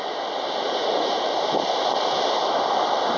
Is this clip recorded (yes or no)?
yes